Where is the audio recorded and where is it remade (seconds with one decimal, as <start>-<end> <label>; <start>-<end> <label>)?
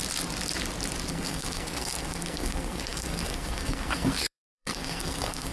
0.0-1.1 recorded; 1.1-5.5 remade